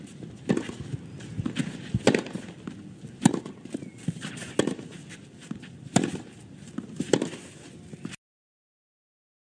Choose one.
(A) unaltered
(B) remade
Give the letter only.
A